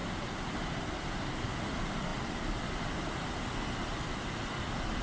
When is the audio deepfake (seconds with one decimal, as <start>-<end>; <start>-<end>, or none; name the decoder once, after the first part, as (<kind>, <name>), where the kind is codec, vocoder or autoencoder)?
0.0-0.8 (vocoder, BigVGAN v2)